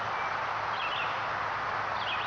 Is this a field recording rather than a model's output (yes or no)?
yes